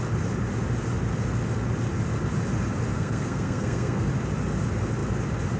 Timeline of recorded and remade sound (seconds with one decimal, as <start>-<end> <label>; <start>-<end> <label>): 0.0-2.9 recorded; 2.9-4.1 remade; 4.1-5.6 recorded